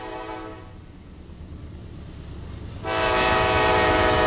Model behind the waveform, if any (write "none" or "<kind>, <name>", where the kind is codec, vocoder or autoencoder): none